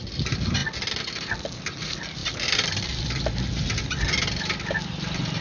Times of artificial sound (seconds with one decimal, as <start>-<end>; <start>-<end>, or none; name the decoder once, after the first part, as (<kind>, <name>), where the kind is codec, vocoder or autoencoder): none